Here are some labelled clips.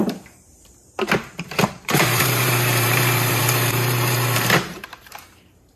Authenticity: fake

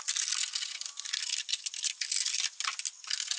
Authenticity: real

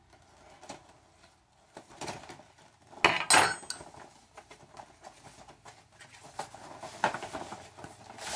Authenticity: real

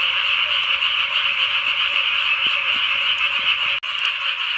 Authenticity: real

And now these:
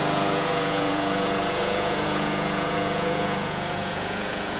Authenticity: fake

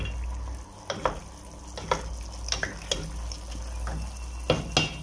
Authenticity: real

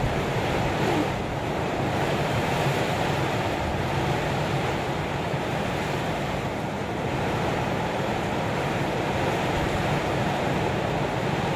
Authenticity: fake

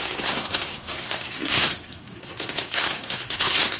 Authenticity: fake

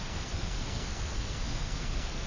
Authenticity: fake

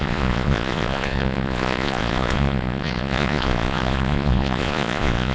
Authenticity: fake